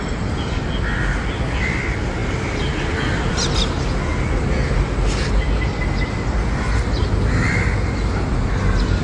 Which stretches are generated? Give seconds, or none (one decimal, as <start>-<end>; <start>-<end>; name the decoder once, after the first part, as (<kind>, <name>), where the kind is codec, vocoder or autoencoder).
none